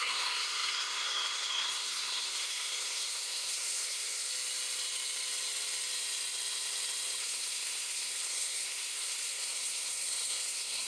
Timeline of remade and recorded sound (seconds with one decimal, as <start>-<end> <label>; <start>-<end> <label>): 0.0-4.3 remade; 4.3-7.2 recorded; 7.2-10.9 remade